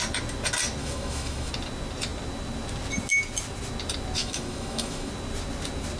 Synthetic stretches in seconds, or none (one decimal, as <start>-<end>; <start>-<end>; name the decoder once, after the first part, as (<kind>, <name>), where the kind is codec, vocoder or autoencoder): 0.8-1.5 (autoencoder, DAC-VAE); 4.2-5.1